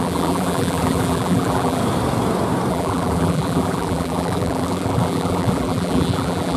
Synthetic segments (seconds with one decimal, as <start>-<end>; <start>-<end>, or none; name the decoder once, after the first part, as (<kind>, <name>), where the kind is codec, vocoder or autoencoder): 0.0-1.8 (vocoder, BigVGAN v2); 2.7-6.6